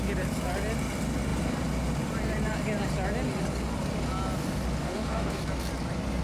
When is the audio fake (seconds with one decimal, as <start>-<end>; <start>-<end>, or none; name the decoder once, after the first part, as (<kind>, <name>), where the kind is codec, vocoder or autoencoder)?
4.8-5.4 (codec, DAC)